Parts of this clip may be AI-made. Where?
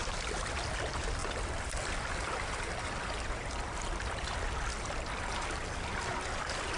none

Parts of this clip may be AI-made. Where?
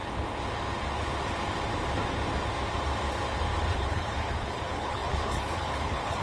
3.7-6.2 (codec, HILCodec)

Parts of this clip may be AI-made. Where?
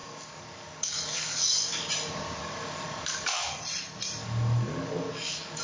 0.0-1.9 (codec, DAC); 2.4-3.6; 4.2-5.6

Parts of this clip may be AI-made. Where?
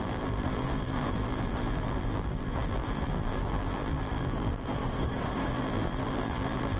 0.0-4.8 (vocoder, BigVGAN v2); 5.5-6.8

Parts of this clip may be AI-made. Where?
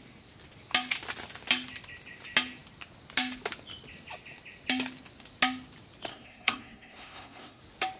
6.1-7.6 (codec, SNAC)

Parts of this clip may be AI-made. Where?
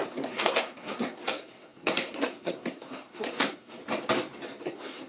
0.0-3.8 (codec, SNAC); 4.6-5.1